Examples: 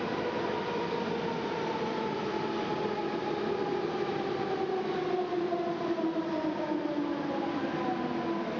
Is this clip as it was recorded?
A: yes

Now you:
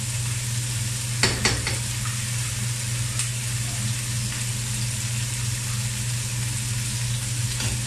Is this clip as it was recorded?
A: yes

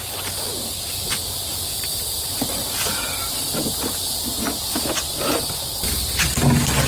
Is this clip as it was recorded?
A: yes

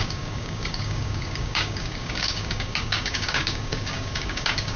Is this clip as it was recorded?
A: no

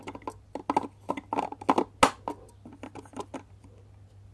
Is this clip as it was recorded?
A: yes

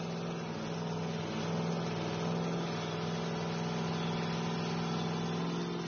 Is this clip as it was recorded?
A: yes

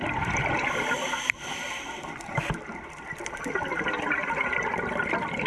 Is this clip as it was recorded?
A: yes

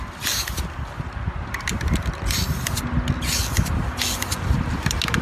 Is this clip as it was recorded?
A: yes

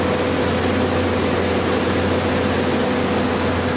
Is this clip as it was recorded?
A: yes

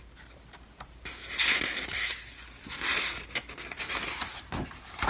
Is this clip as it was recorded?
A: yes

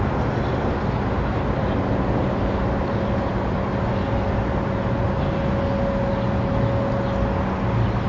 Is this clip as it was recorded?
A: yes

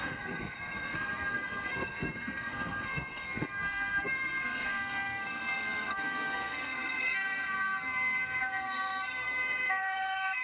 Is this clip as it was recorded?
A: no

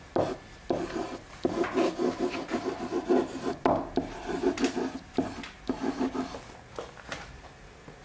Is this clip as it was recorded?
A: yes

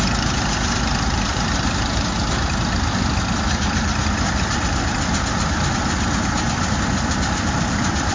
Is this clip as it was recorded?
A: no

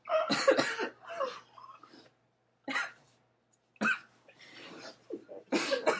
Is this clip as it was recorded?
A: yes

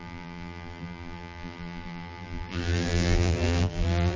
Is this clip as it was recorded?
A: no